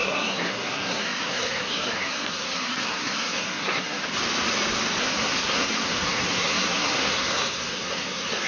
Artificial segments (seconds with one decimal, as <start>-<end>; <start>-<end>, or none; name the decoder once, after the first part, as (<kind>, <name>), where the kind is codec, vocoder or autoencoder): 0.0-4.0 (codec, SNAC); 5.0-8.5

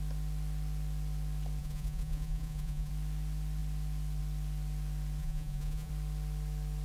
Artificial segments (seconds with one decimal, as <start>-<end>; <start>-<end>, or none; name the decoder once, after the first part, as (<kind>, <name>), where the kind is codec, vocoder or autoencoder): 1.6-2.9 (vocoder, Vocos); 5.2-5.9

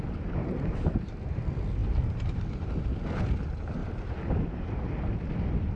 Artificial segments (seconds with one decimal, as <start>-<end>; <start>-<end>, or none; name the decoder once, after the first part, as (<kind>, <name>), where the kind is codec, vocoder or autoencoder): 0.4-1.2 (vocoder, BigVGAN v2)

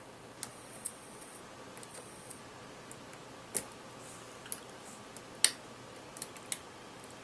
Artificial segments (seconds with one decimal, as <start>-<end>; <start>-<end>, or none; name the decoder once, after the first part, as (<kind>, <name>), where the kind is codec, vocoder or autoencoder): 0.5-1.4 (vocoder, WaveNeXt); 1.9-2.4